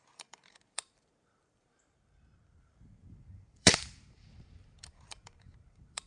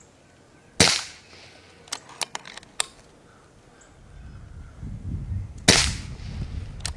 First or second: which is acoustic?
second